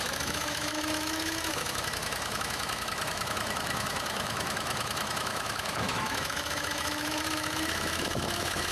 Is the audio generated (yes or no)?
yes